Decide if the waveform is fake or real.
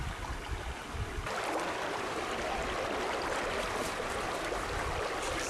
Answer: real